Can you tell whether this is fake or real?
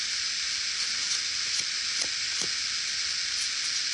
real